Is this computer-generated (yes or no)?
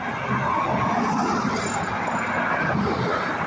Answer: yes